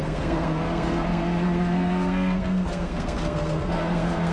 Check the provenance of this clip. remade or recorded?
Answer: remade